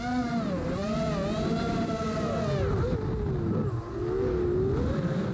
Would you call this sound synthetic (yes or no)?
no